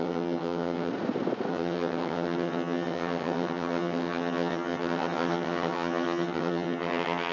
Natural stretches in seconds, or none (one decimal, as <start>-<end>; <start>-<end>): 0.9-1.5